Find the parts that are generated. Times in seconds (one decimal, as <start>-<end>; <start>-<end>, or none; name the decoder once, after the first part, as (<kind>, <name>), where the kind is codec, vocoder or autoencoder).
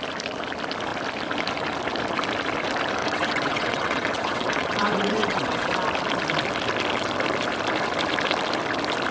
3.0-5.7 (vocoder, WaveNeXt)